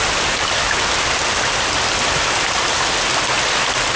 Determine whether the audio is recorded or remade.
recorded